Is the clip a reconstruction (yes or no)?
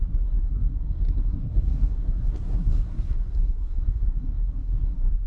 yes